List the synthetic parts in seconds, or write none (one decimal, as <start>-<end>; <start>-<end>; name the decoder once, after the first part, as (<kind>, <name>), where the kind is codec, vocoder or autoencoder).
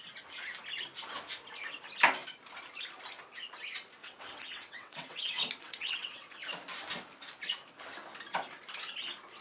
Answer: 4.0-6.3 (vocoder, WaveNeXt)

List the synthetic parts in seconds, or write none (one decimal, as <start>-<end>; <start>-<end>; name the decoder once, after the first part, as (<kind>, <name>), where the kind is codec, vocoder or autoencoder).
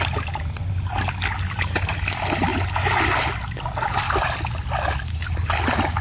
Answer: none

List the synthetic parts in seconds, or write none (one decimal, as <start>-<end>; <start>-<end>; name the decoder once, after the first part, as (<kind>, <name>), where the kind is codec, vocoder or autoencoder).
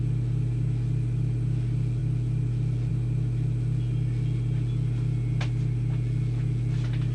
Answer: none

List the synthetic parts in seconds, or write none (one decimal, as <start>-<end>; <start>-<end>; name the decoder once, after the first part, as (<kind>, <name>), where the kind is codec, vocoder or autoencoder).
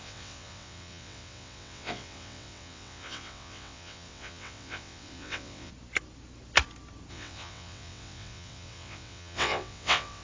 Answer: 0.0-5.7 (vocoder, WaveNeXt); 7.1-10.2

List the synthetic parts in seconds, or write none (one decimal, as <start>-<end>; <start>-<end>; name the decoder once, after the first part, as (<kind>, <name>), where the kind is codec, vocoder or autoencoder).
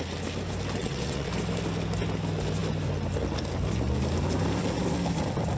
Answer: 0.8-1.3 (vocoder, WaveNeXt)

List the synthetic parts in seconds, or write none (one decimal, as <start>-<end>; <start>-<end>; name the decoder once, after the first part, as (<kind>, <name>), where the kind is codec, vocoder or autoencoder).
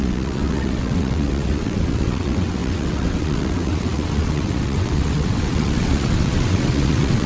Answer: 0.0-7.3 (vocoder, WaveNeXt)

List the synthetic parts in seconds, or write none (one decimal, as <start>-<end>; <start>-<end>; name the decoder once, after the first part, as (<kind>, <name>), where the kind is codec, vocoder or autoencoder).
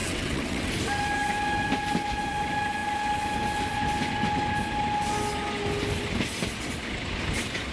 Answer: 0.0-0.7 (vocoder, WaveNeXt)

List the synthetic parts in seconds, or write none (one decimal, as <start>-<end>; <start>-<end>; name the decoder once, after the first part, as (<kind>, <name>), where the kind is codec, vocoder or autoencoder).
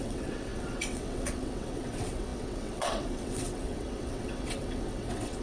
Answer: 0.0-5.4 (vocoder, WaveNeXt)